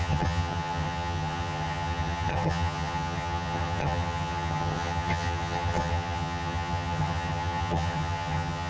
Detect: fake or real fake